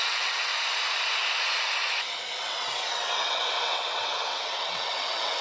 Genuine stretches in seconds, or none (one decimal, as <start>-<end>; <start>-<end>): 0.5-2.4